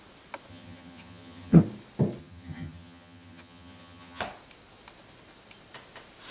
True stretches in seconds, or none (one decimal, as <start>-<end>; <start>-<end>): 0.0-0.5; 1.6-2.2; 4.2-6.3